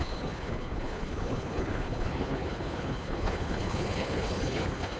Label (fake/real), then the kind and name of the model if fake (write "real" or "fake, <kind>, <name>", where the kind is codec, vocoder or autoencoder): fake, codec, HILCodec